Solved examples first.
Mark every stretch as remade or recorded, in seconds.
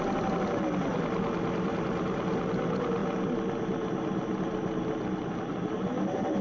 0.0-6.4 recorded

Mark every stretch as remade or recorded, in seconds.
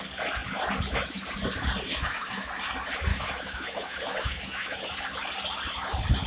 0.0-1.9 recorded; 1.9-2.5 remade; 2.5-3.1 recorded; 3.1-4.9 remade; 4.9-6.3 recorded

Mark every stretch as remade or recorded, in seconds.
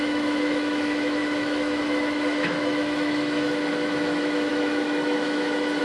0.0-5.8 remade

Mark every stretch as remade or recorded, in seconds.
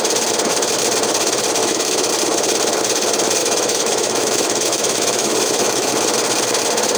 0.0-1.6 recorded; 1.6-2.1 remade; 2.1-3.4 recorded; 3.4-5.9 remade; 5.9-7.0 recorded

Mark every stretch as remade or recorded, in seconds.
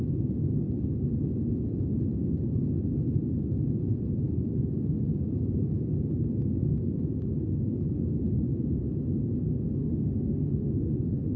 0.0-9.8 recorded; 9.8-11.4 remade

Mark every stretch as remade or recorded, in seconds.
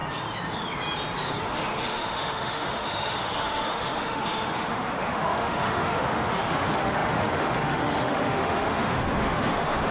0.0-1.4 recorded; 1.4-9.9 remade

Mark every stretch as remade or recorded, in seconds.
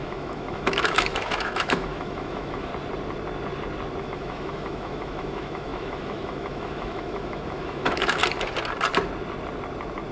0.0-2.7 remade; 2.7-4.0 recorded; 4.0-8.2 remade; 8.2-10.1 recorded